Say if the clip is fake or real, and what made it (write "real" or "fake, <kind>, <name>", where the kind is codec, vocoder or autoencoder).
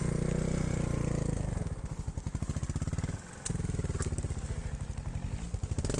real